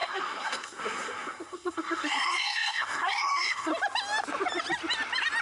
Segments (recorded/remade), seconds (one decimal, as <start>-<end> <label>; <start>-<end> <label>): 0.0-3.7 remade; 3.7-5.4 recorded

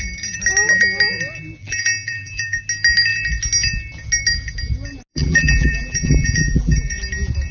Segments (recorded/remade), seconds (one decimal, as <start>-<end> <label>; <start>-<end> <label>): 0.0-1.6 recorded; 1.6-2.6 remade; 2.6-5.1 recorded; 5.1-6.9 remade; 6.9-7.5 recorded

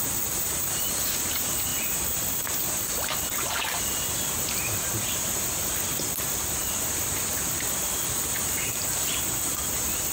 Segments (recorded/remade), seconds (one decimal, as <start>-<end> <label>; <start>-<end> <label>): 0.0-10.1 recorded

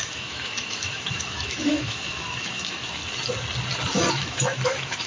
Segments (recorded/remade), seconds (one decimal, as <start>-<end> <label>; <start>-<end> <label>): 0.0-3.0 remade; 3.0-4.1 recorded; 4.1-5.1 remade

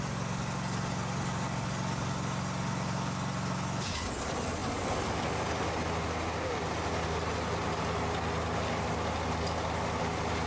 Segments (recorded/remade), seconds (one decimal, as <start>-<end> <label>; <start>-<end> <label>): 0.0-10.5 recorded

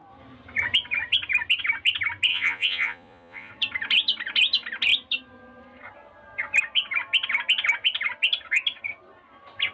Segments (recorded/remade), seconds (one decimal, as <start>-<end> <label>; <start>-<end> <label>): 0.0-2.3 recorded; 2.3-3.5 remade; 3.5-9.7 recorded

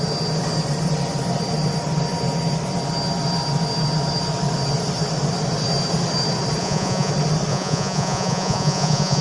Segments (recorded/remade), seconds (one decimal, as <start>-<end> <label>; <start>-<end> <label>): 0.0-6.6 recorded; 6.6-7.1 remade; 7.1-7.5 recorded; 7.5-9.2 remade